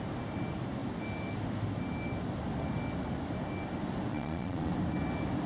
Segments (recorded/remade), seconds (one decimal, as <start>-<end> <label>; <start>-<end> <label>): 0.0-4.1 recorded; 4.1-4.7 remade; 4.7-5.5 recorded